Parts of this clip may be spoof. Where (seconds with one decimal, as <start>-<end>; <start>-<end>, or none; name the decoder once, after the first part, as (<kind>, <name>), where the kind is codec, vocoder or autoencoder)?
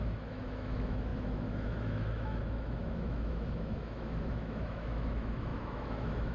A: 0.0-6.3 (autoencoder, DAC-VAE)